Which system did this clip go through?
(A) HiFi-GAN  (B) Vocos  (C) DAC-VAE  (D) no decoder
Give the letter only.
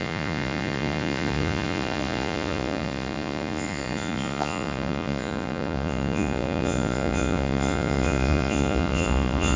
B